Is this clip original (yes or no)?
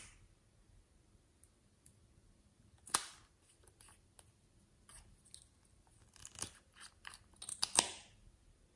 yes